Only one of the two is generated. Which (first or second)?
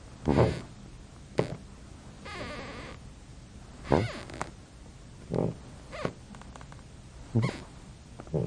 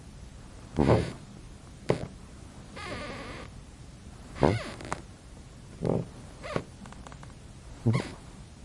second